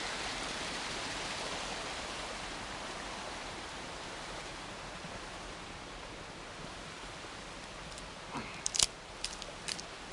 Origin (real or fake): fake